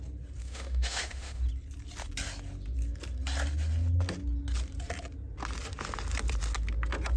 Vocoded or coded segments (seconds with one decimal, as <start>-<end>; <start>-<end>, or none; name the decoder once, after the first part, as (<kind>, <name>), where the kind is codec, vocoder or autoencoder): 0.4-1.4 (autoencoder, DAC-VAE)